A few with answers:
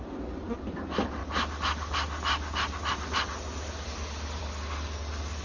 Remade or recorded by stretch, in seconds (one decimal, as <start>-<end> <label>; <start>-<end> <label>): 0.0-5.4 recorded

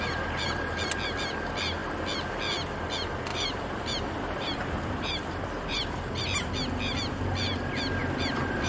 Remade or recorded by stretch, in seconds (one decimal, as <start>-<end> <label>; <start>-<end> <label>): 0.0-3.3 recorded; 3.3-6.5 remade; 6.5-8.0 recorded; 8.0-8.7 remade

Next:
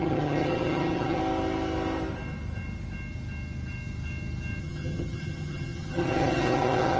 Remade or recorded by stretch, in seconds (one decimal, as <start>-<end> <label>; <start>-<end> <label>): 0.0-1.2 remade; 1.2-4.6 recorded; 4.6-7.0 remade